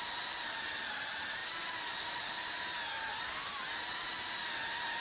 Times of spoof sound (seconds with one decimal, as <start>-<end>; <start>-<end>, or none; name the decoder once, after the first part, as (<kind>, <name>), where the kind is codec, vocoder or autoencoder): none